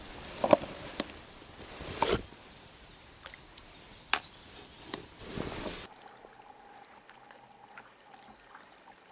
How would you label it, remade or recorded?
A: recorded